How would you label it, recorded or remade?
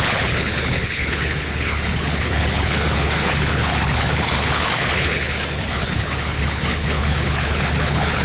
remade